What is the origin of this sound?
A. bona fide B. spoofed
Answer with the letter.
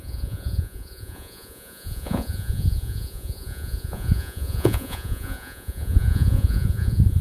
B